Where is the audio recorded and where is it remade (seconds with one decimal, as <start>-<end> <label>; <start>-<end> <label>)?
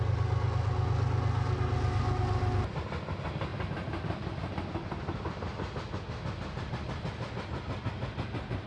0.0-8.7 recorded